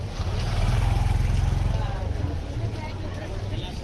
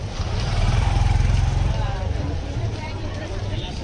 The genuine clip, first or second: first